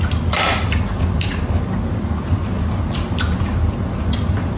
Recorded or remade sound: recorded